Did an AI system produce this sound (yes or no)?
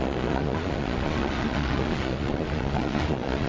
yes